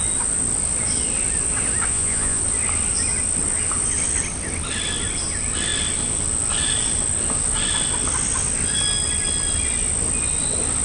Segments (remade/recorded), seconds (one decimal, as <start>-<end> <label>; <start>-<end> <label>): 0.0-1.9 recorded; 1.9-2.4 remade; 2.4-10.8 recorded